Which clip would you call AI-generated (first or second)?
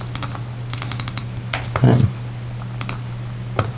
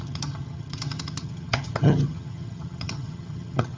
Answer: second